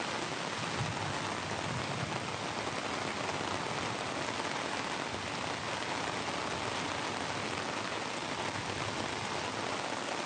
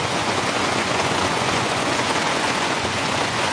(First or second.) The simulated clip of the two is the second